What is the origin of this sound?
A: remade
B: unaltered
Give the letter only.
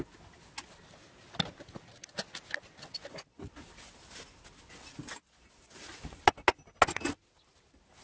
B